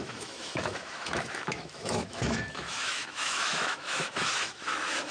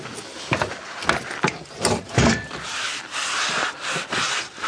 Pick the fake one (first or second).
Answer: first